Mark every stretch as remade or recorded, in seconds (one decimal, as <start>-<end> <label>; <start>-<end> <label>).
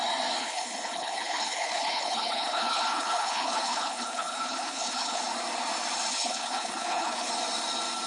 0.0-0.4 recorded; 0.4-5.2 remade; 5.2-6.1 recorded; 6.1-7.3 remade; 7.3-8.1 recorded